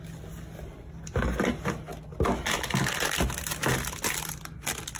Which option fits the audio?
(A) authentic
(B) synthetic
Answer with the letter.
A